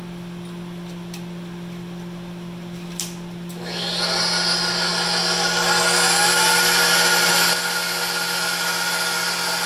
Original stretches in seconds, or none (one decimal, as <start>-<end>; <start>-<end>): 0.0-9.7